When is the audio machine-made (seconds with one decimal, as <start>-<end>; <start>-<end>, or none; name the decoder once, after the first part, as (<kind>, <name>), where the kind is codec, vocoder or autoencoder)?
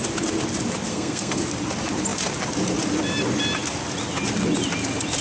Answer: 0.9-1.4 (codec, SNAC)